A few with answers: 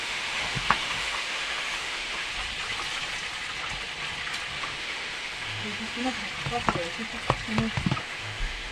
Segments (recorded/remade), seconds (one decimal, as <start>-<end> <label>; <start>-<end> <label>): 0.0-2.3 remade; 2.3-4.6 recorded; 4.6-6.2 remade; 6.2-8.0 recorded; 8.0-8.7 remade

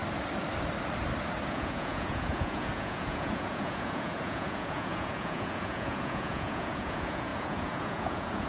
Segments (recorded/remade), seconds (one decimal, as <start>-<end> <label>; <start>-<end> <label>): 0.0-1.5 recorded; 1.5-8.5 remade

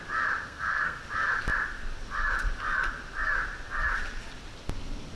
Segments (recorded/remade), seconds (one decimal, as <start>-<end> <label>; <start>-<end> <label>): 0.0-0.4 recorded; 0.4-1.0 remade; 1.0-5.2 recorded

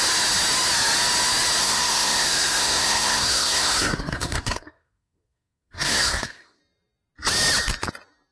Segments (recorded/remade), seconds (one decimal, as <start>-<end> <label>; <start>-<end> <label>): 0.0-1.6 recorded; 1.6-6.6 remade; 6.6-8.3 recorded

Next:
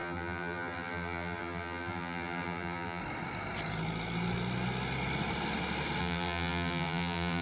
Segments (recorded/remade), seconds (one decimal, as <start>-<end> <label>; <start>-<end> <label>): 0.0-3.0 remade; 3.0-6.0 recorded; 6.0-7.4 remade